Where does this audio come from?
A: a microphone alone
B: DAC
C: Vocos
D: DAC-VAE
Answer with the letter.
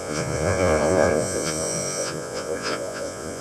C